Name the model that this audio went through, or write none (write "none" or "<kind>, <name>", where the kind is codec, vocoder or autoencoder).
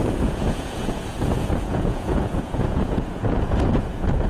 vocoder, Vocos